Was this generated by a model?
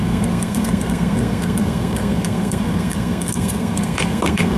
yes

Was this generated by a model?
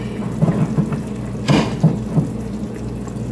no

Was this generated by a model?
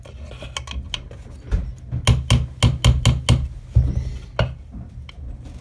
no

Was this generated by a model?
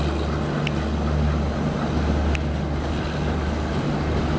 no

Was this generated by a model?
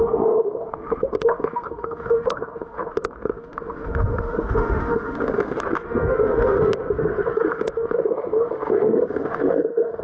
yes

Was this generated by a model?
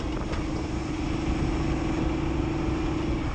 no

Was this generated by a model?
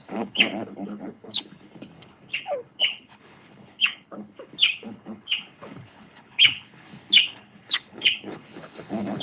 yes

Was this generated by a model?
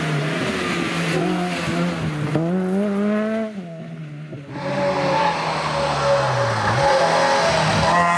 no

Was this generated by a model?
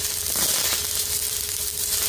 yes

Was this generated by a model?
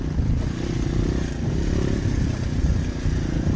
no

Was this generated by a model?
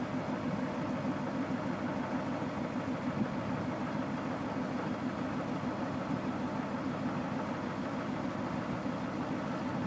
no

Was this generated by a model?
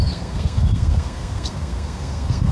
yes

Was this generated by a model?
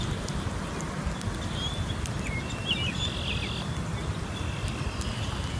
no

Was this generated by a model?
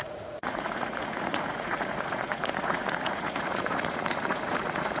yes